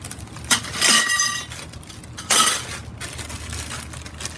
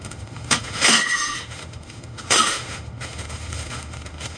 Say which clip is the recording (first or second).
first